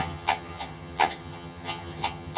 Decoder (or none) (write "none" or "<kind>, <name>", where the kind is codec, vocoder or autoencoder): vocoder, HiFi-GAN